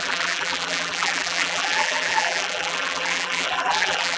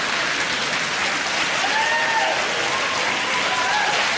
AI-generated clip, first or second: first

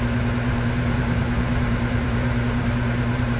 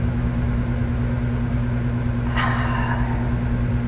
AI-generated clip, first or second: first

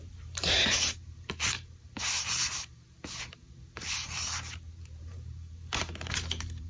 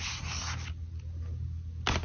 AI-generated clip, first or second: first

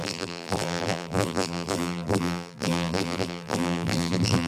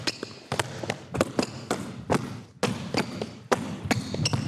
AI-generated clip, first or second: first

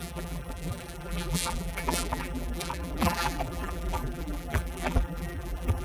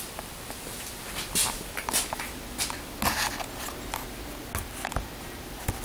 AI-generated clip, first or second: first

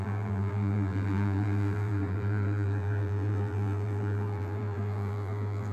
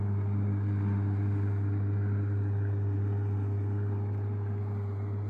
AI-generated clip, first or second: first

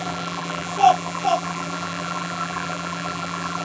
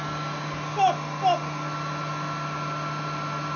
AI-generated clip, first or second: first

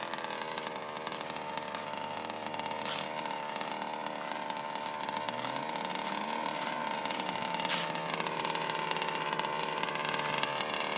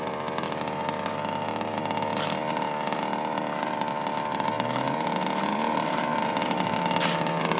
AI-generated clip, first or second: second